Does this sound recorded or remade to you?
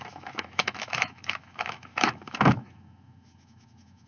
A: remade